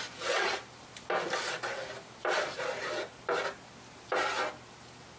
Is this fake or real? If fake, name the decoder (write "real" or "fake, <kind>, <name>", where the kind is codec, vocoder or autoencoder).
real